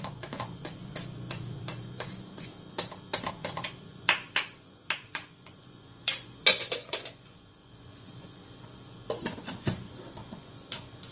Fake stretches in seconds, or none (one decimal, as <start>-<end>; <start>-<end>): 0.0-2.5; 3.3-11.1